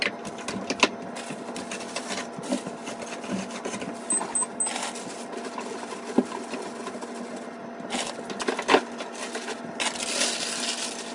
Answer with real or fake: real